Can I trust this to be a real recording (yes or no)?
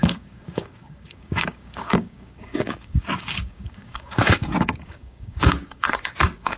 no